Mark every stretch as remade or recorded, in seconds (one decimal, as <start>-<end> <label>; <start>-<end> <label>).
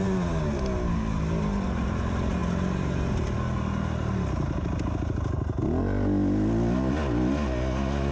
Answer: 0.0-8.1 recorded